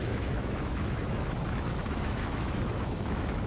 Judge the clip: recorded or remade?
remade